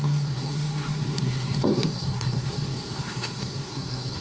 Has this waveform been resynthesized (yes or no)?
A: yes